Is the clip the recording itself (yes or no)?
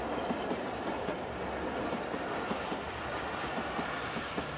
yes